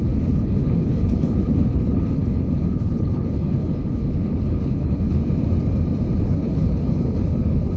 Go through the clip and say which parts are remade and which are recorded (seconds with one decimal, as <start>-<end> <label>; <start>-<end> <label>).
0.0-5.2 remade; 5.2-6.2 recorded; 6.2-7.8 remade